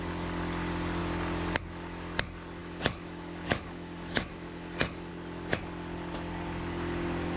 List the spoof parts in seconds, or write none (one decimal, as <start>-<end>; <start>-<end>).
2.6-5.1